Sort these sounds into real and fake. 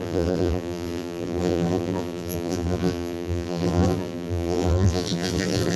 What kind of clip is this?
fake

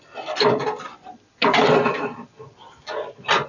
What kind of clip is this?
fake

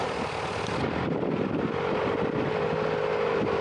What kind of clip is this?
real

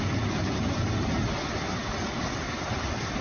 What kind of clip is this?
real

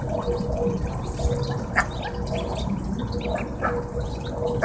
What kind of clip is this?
real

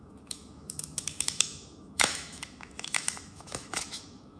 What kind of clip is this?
fake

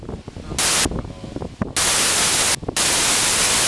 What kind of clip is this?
real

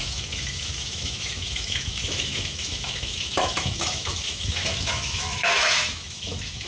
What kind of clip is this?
fake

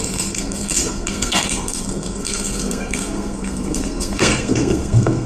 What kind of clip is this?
fake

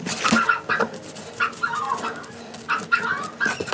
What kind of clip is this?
real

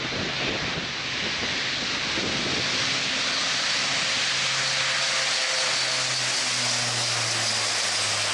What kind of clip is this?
real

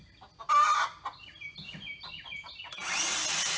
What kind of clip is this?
real